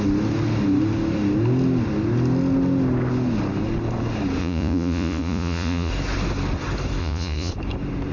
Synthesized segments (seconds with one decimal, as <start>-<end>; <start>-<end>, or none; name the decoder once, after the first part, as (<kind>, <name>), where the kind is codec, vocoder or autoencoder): 4.4-5.9 (vocoder, Vocos); 7.0-7.5